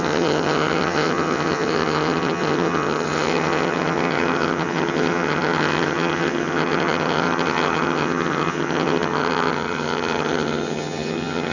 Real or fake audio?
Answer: fake